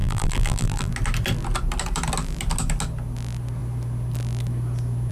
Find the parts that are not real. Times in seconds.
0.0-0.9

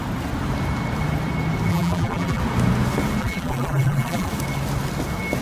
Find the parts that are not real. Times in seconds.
1.7-2.4; 3.2-4.3

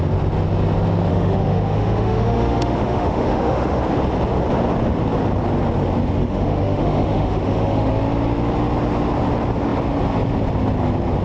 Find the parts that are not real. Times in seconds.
1.1-3.8; 6.2-7.9

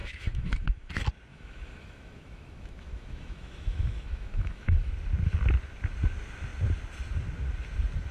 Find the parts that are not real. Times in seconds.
0.0-0.9; 1.3-4.9

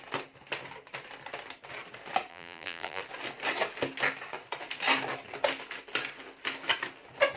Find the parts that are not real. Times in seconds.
2.3-3.0